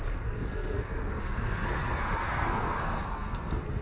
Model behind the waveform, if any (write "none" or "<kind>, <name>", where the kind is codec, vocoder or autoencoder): codec, SNAC